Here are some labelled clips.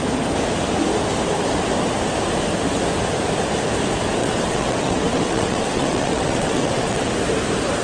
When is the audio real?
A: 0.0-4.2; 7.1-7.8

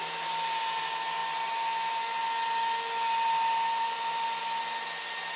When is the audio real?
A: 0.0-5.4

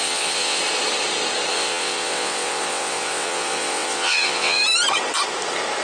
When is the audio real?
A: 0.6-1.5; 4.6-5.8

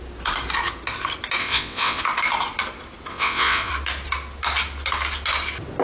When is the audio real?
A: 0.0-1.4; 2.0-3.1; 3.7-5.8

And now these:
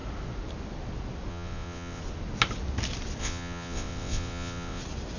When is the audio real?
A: 0.0-1.3; 2.0-3.2; 4.8-5.2

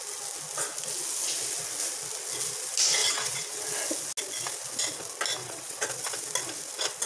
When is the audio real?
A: 0.0-3.0; 3.6-5.4; 5.9-7.1